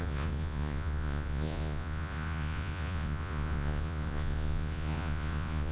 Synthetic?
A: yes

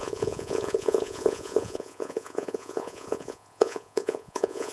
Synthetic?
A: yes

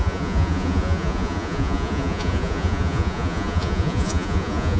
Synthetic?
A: yes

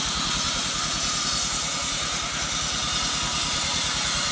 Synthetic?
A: yes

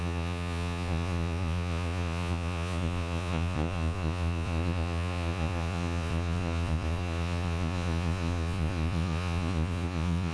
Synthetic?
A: yes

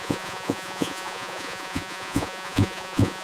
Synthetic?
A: yes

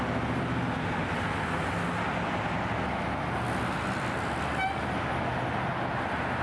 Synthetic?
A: no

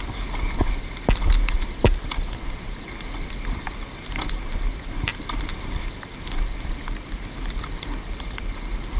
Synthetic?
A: no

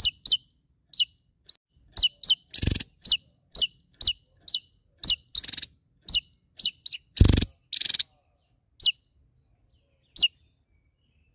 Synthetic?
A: no